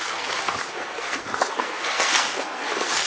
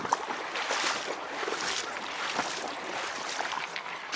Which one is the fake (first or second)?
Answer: first